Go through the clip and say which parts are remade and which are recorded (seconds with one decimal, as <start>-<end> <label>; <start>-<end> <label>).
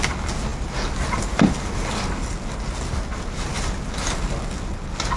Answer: 0.0-5.2 recorded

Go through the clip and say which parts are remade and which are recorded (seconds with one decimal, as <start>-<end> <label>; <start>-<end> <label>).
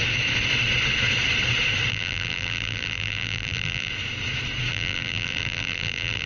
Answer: 0.0-1.9 recorded; 1.9-3.9 remade; 3.9-4.7 recorded; 4.7-6.3 remade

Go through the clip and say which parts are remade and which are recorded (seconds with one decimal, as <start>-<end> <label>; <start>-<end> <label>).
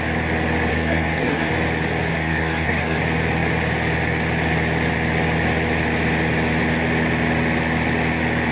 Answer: 0.0-0.7 recorded; 0.7-1.5 remade; 1.5-2.1 recorded; 2.1-3.0 remade; 3.0-8.5 recorded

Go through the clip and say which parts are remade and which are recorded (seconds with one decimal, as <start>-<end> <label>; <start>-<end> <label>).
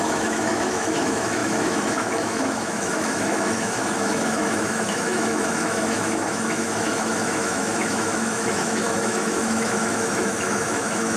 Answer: 0.0-11.2 remade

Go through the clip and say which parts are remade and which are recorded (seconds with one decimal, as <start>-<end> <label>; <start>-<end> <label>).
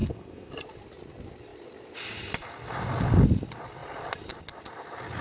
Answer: 0.0-0.5 remade; 0.5-5.2 recorded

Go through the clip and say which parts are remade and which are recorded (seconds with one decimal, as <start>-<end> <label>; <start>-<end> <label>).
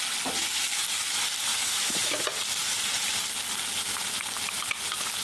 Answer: 0.0-1.5 recorded; 1.5-2.2 remade; 2.2-5.2 recorded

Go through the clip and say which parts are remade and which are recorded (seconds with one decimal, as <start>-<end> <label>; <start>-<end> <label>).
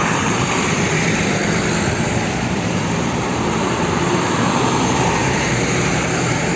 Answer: 0.0-1.4 remade; 1.4-2.0 recorded; 2.0-6.6 remade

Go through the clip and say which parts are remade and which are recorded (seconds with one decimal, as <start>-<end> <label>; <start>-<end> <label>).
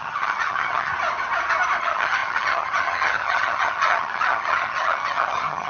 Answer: 0.0-0.9 remade; 0.9-1.8 recorded; 1.8-5.7 remade